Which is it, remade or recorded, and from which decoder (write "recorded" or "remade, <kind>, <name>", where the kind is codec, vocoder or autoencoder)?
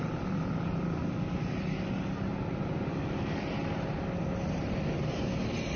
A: recorded